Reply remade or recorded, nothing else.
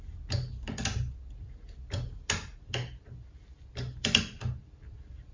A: recorded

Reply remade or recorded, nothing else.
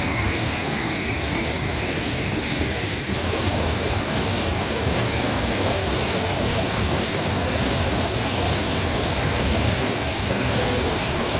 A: remade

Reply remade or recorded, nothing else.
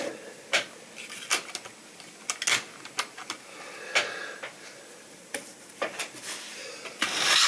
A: recorded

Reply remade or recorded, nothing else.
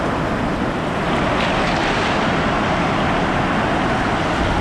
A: recorded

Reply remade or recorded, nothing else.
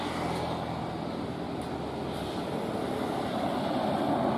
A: recorded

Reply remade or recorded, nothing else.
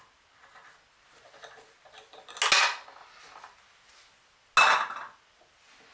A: recorded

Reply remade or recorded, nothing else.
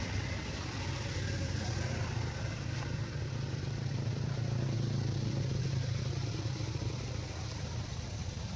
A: remade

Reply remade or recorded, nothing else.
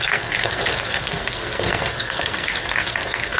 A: remade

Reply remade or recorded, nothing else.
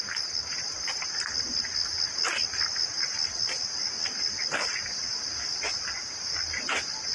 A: recorded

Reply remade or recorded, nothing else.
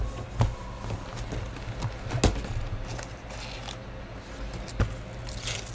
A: recorded